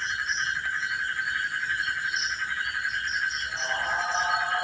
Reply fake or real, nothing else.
real